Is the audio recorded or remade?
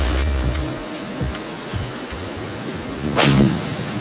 remade